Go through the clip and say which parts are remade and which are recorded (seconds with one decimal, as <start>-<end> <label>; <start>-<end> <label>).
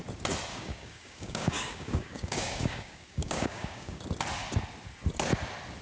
0.0-0.5 recorded; 0.5-4.0 remade; 4.0-5.8 recorded